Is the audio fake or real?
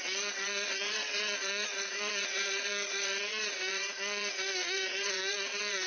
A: fake